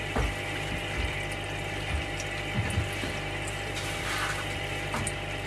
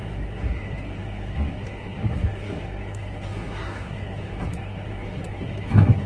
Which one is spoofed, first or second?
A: second